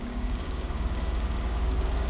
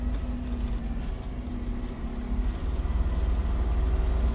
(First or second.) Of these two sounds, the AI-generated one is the first